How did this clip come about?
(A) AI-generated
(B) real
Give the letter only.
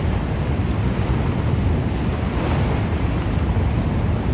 B